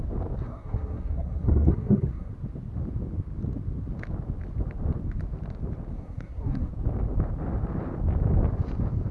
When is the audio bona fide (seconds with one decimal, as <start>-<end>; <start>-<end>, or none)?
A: 0.0-0.4; 2.3-5.9; 6.7-9.1